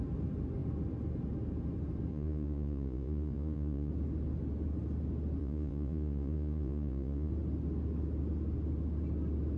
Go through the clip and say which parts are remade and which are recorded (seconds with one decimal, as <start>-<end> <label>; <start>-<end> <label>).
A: 0.0-2.1 recorded; 2.1-3.9 remade; 3.9-5.4 recorded; 5.4-7.3 remade; 7.3-9.6 recorded